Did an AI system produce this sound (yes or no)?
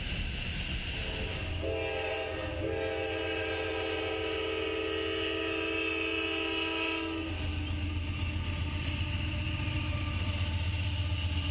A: no